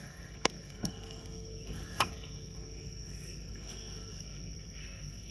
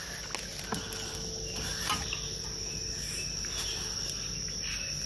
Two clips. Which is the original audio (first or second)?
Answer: second